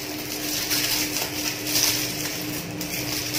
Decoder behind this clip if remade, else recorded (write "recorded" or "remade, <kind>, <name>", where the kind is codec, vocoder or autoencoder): remade, vocoder, BigVGAN v2